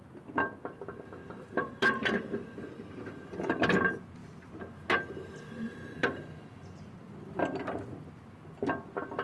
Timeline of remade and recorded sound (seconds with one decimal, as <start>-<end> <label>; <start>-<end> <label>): 0.0-1.2 recorded; 1.2-2.6 remade; 2.6-6.0 recorded; 6.0-6.6 remade; 6.6-9.2 recorded